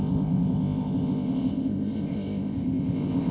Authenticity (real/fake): fake